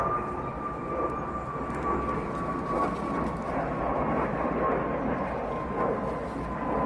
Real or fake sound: real